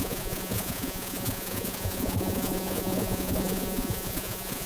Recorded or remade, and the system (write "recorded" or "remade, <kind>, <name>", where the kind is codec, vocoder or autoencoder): remade, vocoder, Vocos